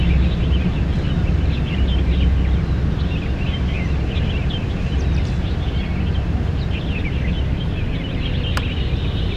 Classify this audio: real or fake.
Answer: real